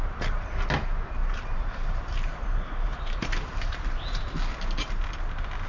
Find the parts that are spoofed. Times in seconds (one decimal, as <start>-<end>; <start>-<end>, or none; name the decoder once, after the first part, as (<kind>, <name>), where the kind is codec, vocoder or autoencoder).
1.2-4.2 (vocoder, BigVGAN v2)